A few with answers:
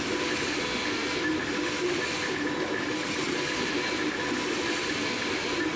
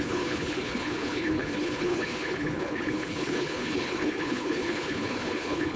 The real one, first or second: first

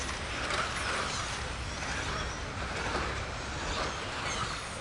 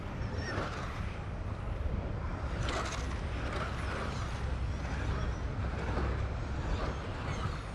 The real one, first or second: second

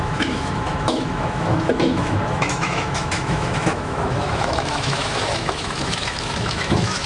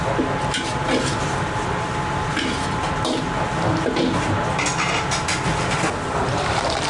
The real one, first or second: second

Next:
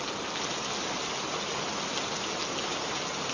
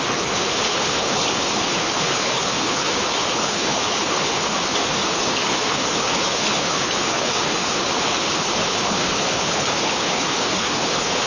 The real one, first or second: first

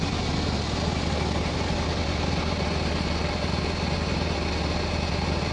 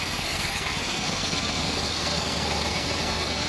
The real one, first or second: first